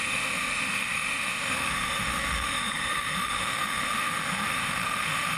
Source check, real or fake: fake